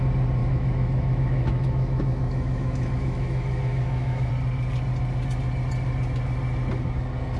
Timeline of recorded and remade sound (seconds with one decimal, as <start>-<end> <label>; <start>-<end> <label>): 0.0-0.4 recorded; 0.4-4.3 remade; 4.3-7.4 recorded